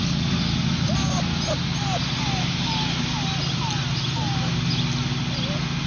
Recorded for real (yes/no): yes